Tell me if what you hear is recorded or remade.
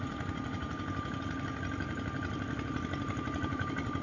recorded